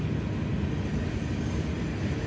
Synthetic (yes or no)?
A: no